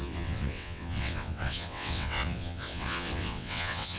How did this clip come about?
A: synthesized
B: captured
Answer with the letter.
A